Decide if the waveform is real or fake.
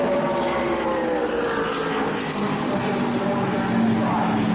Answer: real